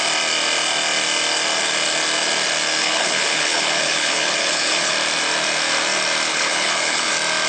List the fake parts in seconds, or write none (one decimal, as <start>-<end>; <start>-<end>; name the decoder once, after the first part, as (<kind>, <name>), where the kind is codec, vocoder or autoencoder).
2.8-4.9 (codec, HILCodec); 6.3-7.1